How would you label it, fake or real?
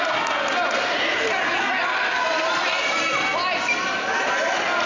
real